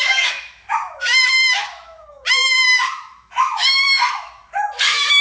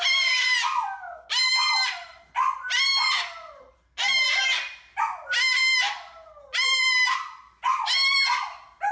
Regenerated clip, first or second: first